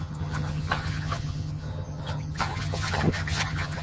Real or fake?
fake